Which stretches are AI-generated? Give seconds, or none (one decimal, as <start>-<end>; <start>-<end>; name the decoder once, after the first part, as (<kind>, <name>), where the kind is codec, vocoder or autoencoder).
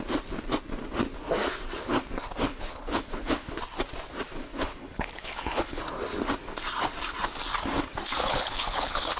2.5-3.6 (codec, HILCodec); 4.5-5.8; 8.2-9.2